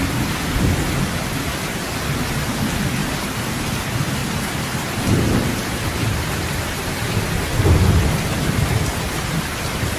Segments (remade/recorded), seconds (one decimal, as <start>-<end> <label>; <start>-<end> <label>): 0.0-3.0 recorded; 3.0-3.7 remade; 3.7-6.0 recorded; 6.0-6.9 remade; 6.9-10.0 recorded